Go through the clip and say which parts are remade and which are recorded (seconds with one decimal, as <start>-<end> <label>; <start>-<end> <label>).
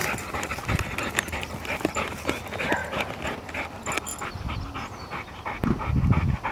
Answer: 0.0-2.8 recorded; 2.8-3.5 remade; 3.5-6.5 recorded